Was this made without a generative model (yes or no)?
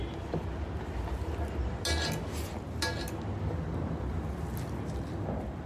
yes